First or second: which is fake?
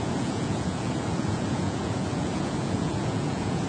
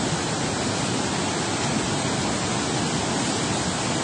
first